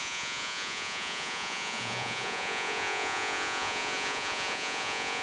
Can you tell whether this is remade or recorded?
remade